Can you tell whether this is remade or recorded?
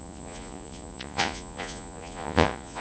remade